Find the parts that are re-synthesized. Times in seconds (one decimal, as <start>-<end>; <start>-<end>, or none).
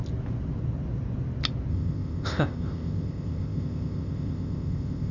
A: 1.7-5.1